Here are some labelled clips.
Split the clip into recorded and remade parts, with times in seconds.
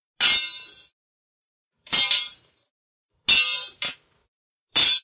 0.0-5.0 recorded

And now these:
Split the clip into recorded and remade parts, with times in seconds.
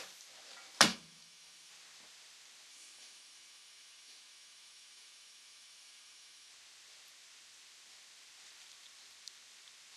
0.0-0.9 recorded; 0.9-1.7 remade; 1.7-2.7 recorded; 2.7-6.5 remade; 6.5-10.0 recorded